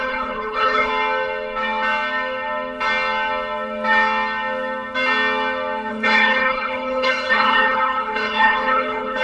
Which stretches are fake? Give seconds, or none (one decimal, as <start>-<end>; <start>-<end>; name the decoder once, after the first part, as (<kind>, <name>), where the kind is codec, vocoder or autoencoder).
0.0-0.9 (codec, HILCodec); 5.9-9.2